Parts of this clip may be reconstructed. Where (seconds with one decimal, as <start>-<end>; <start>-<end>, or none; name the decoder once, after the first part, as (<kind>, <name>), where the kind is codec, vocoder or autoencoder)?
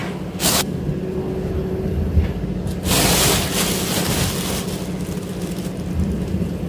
0.0-0.8 (codec, DAC)